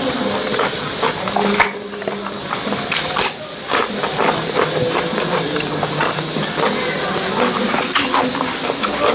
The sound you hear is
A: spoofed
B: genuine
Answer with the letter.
B